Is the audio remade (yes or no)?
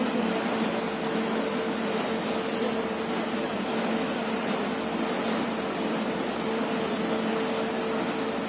no